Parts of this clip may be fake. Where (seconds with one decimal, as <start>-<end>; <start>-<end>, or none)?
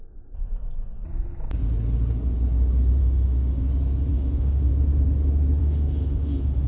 3.0-3.6; 4.1-4.7; 5.6-6.7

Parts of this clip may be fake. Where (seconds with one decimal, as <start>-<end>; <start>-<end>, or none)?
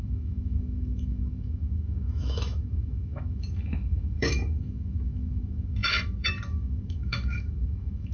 0.0-8.1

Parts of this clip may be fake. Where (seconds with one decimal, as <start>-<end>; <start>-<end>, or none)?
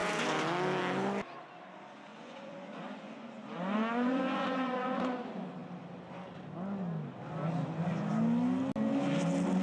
2.1-5.0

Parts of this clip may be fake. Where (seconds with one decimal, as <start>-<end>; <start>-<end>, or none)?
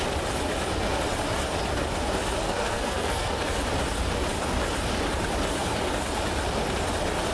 2.4-3.3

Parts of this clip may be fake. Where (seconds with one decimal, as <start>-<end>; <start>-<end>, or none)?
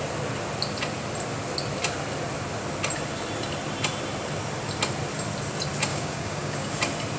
5.9-6.7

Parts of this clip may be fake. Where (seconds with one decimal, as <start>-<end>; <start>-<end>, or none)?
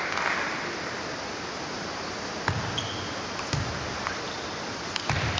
none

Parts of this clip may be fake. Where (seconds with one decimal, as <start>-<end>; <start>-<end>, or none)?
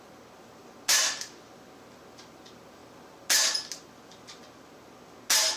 none